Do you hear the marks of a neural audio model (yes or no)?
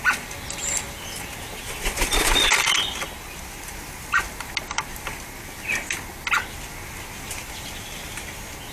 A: no